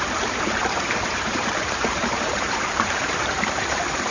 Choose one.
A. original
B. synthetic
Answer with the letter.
B